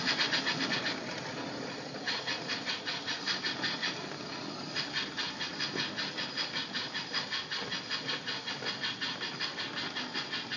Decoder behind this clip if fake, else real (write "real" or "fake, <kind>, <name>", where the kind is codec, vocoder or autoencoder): real